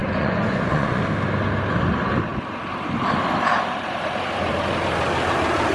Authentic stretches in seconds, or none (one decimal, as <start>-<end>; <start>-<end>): 1.0-5.7